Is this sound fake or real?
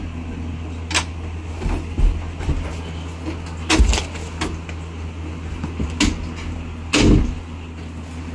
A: real